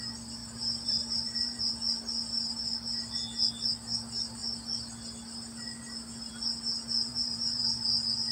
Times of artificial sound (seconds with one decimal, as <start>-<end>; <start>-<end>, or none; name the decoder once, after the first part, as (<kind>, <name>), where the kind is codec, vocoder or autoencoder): 0.4-1.7 (vocoder, BigVGAN v2); 7.1-7.6